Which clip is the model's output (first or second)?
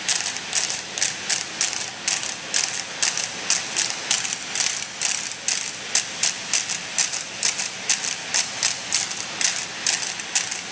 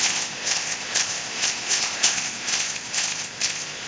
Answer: second